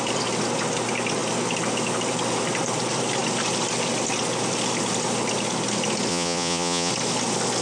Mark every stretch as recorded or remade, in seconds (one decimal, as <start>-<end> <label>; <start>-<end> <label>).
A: 0.0-6.1 recorded; 6.1-6.9 remade; 6.9-7.6 recorded